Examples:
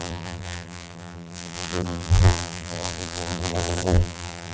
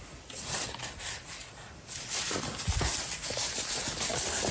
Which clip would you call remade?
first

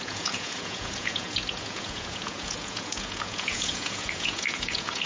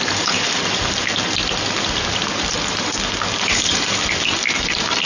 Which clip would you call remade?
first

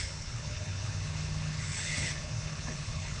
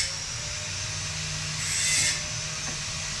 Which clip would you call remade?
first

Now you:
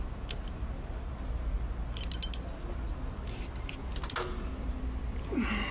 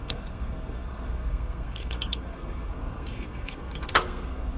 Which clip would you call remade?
second